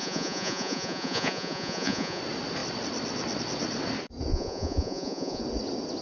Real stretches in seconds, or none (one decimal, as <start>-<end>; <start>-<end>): 2.2-4.3; 5.4-6.0